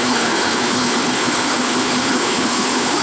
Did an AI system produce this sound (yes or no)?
yes